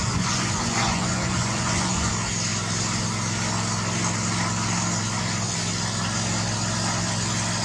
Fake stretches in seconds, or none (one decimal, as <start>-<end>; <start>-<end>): 0.0-2.1